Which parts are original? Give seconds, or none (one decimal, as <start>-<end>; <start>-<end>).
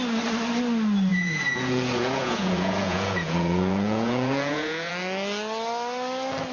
0.0-1.1; 4.9-6.5